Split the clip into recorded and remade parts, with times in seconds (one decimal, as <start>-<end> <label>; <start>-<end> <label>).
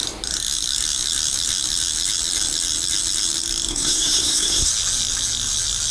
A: 0.0-3.7 recorded; 3.7-4.7 remade; 4.7-5.9 recorded